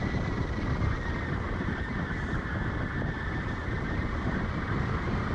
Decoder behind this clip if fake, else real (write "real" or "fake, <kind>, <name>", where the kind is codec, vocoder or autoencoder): real